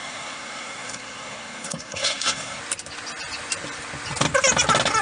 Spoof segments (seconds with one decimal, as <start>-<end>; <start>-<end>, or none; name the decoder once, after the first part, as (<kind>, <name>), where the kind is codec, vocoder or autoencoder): 0.0-2.6 (codec, SNAC)